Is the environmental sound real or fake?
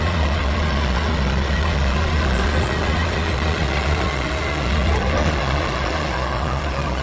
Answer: fake